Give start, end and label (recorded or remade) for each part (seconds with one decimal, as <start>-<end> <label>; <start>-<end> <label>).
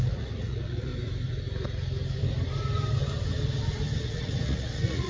0.0-0.9 remade; 0.9-4.0 recorded; 4.0-5.1 remade